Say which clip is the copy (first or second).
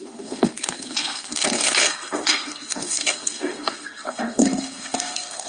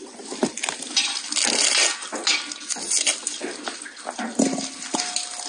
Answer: first